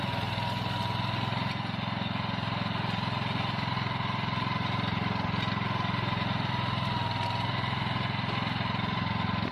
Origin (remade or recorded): recorded